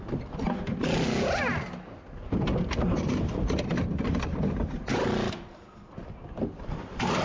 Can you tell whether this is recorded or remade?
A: recorded